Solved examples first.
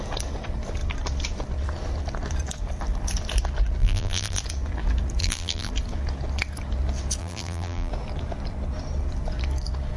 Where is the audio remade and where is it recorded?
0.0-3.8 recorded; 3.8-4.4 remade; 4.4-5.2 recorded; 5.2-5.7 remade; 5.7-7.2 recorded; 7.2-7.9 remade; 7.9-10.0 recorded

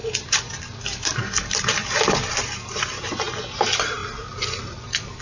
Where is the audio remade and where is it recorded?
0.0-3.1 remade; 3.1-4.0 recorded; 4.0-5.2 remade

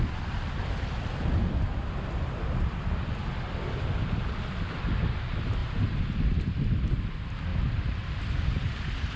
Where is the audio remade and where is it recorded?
0.0-5.6 recorded; 5.6-6.2 remade; 6.2-7.5 recorded; 7.5-8.7 remade; 8.7-9.2 recorded

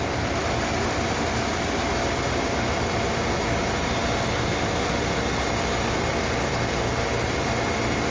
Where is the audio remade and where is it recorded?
0.0-8.1 recorded